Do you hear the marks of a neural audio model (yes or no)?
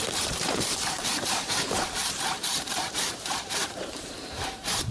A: yes